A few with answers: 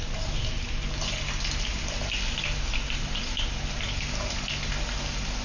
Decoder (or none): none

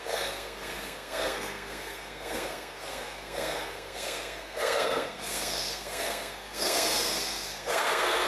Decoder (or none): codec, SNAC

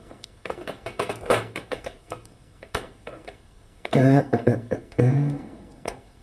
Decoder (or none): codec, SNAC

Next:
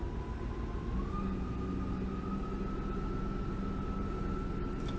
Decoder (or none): none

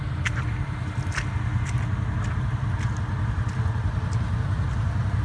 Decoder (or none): none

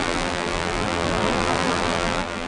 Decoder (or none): vocoder, BigVGAN v2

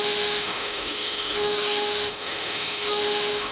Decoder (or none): autoencoder, DAC-VAE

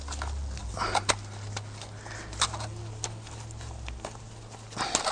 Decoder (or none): none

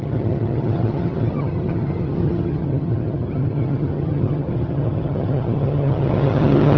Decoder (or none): vocoder, HiFi-GAN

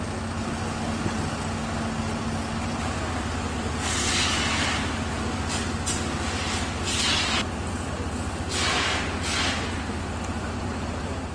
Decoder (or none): none